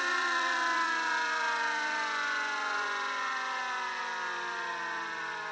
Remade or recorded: remade